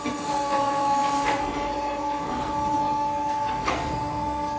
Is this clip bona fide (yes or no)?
no